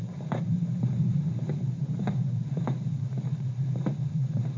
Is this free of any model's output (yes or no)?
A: no